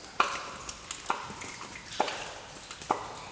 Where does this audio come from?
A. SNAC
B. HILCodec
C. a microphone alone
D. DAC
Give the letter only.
C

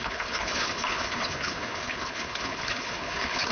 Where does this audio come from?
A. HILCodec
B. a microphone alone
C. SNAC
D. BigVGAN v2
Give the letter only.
A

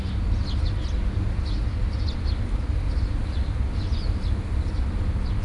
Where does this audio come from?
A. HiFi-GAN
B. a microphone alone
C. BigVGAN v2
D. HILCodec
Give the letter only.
B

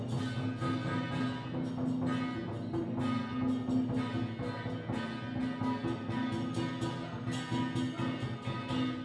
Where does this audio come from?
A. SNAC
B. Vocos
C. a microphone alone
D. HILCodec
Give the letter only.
C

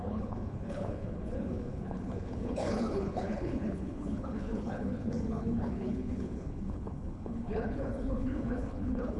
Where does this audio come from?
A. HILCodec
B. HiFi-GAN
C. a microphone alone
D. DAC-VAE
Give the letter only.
A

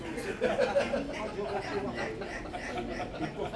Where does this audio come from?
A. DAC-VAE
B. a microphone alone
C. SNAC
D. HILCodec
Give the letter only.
B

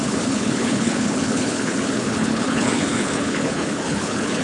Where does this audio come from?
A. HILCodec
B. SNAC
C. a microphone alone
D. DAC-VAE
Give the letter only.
A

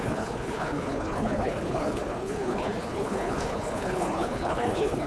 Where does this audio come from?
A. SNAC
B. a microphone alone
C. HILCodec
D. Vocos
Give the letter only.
C